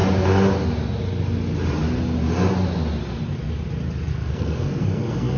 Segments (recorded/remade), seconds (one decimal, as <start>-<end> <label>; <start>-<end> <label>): 0.0-4.1 recorded; 4.1-5.4 remade